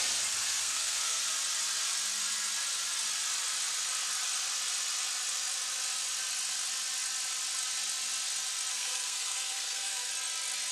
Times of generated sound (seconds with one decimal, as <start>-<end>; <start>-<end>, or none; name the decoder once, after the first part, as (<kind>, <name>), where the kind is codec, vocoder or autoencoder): 0.4-1.2 (codec, SNAC); 8.7-10.1